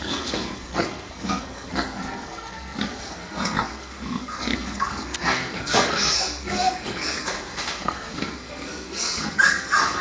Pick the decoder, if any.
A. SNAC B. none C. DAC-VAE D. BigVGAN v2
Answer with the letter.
A